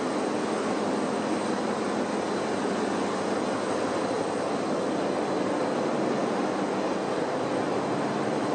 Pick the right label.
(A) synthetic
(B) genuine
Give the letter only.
B